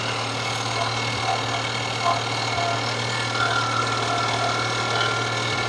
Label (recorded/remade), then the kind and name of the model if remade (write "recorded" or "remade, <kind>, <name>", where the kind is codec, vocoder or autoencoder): recorded